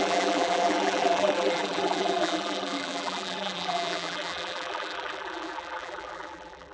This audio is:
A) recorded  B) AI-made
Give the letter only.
B